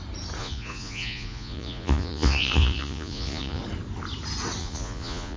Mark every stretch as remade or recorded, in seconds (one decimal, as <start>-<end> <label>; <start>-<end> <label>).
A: 0.0-0.4 recorded; 0.4-3.6 remade; 3.6-4.6 recorded; 4.6-5.4 remade